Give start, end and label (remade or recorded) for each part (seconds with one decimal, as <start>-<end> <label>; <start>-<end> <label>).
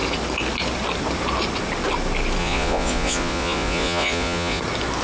0.0-2.4 recorded; 2.4-4.6 remade; 4.6-5.0 recorded